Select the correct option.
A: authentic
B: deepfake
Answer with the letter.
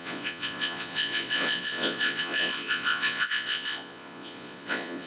B